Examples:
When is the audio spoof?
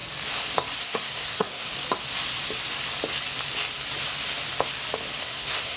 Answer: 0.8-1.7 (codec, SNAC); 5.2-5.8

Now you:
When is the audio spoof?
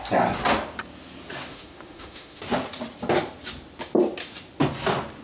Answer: 1.5-2.4 (autoencoder, DAC-VAE)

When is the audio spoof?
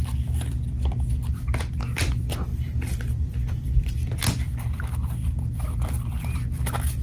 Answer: 0.0-7.0 (vocoder, BigVGAN v2)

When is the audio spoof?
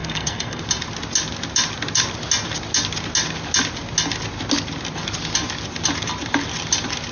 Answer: 0.0-0.6 (codec, SNAC)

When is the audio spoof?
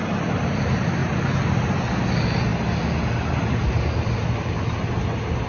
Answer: none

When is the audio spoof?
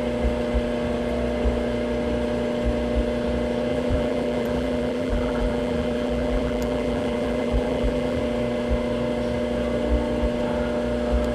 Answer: 3.7-8.2 (vocoder, BigVGAN v2)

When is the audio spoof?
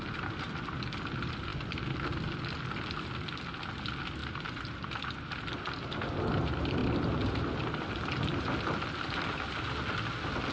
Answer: none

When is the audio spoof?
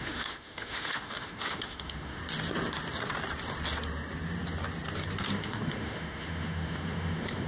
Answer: 0.0-2.2 (autoencoder, DAC-VAE); 5.3-7.5